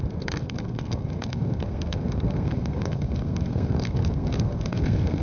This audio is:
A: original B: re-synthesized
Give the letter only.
B